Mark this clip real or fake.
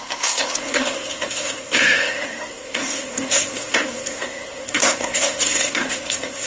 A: fake